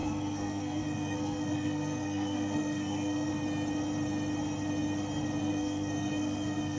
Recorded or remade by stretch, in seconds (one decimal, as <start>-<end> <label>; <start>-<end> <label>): 0.0-3.3 remade; 3.3-5.4 recorded; 5.4-6.8 remade